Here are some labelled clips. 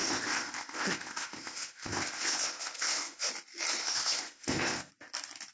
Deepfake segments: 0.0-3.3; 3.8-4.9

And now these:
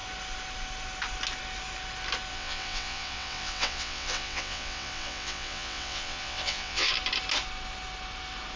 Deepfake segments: 2.3-6.9

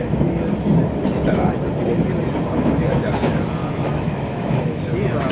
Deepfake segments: 3.6-4.8